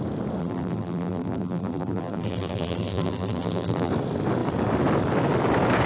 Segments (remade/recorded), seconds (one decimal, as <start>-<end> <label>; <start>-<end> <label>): 0.0-0.4 recorded; 0.4-3.9 remade; 3.9-5.9 recorded